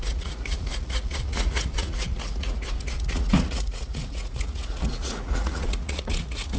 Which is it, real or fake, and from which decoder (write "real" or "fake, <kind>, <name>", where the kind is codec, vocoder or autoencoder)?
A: fake, vocoder, Vocos